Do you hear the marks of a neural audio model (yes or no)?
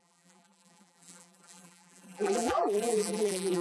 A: yes